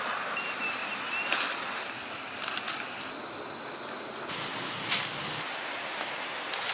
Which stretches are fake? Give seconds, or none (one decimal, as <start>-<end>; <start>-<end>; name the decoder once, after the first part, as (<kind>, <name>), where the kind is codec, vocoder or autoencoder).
none